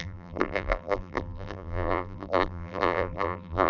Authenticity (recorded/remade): remade